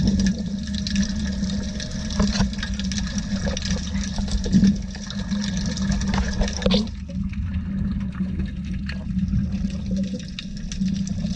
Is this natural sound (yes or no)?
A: yes